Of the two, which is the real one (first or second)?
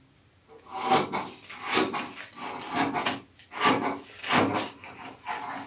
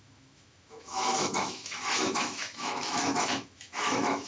first